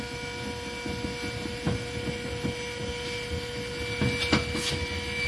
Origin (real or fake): real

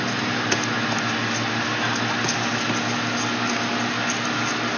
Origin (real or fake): real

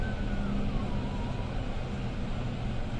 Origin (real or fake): real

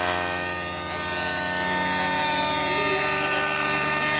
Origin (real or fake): real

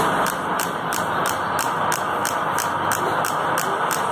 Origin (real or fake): real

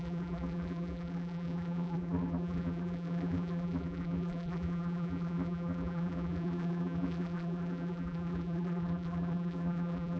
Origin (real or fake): fake